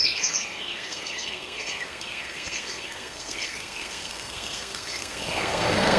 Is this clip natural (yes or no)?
no